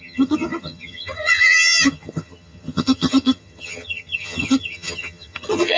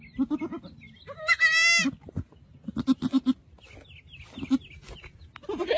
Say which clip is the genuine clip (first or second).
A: second